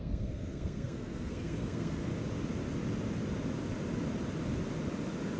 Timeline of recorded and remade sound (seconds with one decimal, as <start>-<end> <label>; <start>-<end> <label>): 0.0-2.1 remade; 2.1-5.4 recorded